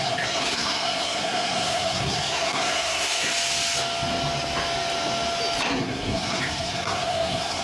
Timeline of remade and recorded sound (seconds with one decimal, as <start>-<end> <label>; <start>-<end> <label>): 0.0-3.3 remade; 3.3-5.7 recorded; 5.7-7.6 remade